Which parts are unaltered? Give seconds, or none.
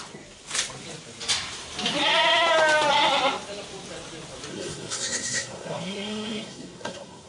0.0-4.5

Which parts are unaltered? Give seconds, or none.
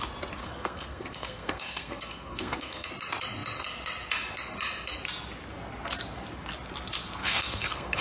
0.0-0.4; 2.9-7.2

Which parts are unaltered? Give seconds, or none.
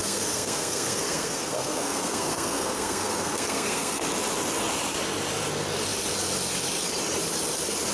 4.0-7.9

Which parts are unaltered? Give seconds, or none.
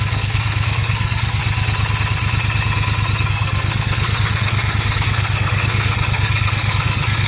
1.4-3.3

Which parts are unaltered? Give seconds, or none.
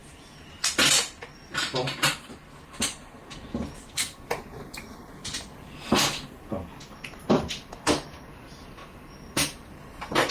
0.0-3.8; 4.3-10.3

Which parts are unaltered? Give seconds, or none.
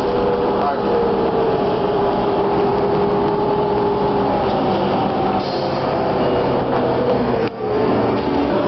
0.0-7.1